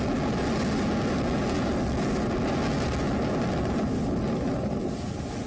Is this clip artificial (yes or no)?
no